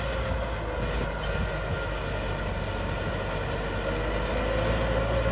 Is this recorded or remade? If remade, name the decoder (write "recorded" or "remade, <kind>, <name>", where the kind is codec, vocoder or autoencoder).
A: recorded